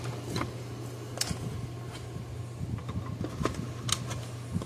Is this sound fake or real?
real